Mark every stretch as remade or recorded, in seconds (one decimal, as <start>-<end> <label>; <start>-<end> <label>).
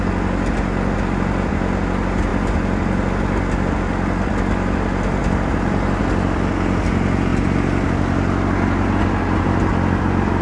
0.0-5.2 recorded; 5.2-6.0 remade; 6.0-10.4 recorded